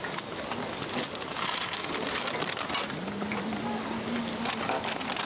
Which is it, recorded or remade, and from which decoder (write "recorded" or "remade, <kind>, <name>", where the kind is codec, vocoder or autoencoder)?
recorded